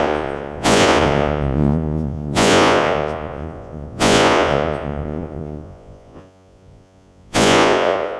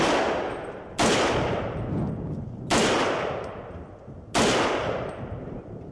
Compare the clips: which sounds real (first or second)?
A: second